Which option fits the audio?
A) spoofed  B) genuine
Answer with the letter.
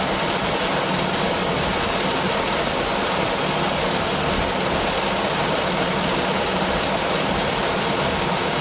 B